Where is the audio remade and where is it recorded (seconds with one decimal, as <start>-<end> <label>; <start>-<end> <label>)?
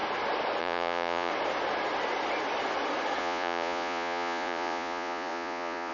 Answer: 0.0-0.6 recorded; 0.6-1.3 remade; 1.3-3.2 recorded; 3.2-5.9 remade